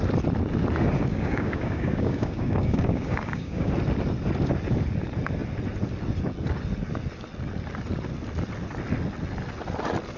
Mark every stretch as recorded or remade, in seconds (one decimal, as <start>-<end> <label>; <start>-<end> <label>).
0.0-1.1 recorded; 1.1-3.7 remade; 3.7-10.2 recorded